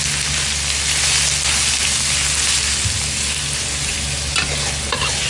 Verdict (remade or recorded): recorded